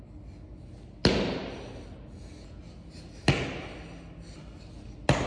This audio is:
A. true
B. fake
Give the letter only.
A